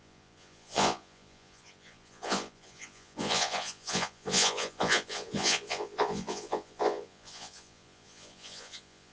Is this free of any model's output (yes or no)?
no